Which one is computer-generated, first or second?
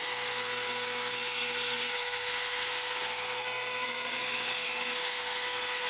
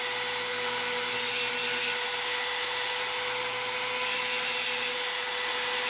first